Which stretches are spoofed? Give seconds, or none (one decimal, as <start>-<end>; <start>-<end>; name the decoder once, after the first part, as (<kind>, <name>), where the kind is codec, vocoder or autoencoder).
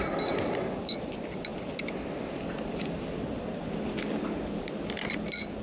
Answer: none